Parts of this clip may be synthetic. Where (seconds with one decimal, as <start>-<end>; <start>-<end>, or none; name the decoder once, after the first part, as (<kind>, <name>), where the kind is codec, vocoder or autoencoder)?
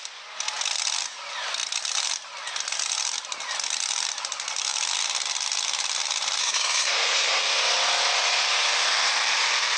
6.4-7.4 (codec, SNAC)